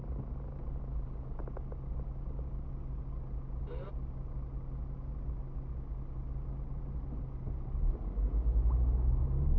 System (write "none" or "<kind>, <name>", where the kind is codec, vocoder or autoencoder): none